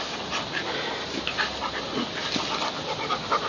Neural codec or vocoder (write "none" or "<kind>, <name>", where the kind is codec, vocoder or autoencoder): none